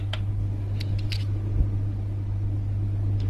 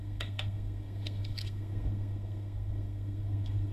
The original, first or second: first